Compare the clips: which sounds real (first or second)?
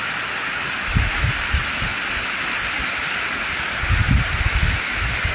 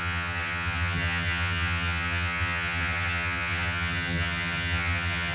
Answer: first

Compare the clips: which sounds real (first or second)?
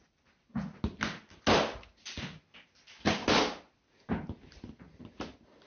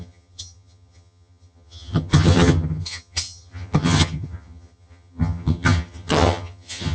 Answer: first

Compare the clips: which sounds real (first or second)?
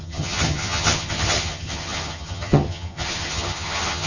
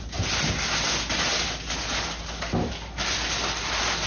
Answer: second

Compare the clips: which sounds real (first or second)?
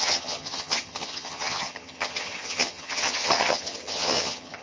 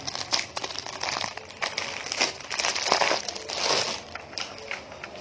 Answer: second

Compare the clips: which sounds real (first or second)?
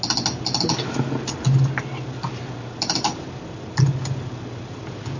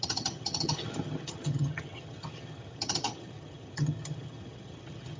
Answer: first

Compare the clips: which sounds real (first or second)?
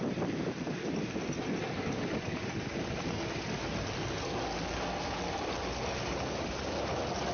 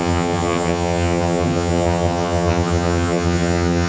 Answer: first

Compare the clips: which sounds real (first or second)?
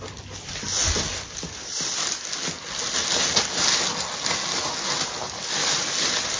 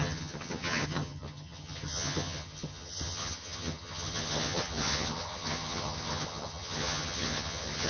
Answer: first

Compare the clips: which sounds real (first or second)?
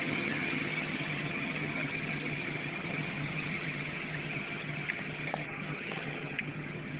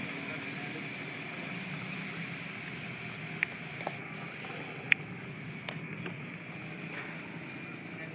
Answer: second